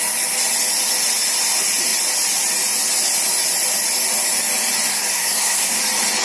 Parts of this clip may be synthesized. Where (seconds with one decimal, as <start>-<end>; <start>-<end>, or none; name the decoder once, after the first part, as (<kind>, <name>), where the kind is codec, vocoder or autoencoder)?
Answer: 4.9-5.8 (codec, SNAC)